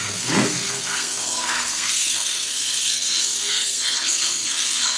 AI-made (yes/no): yes